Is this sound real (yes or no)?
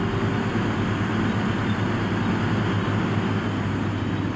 yes